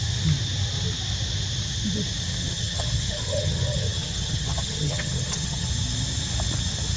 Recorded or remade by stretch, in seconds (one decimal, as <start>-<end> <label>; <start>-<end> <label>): 0.0-2.4 recorded; 2.4-5.7 remade; 5.7-7.0 recorded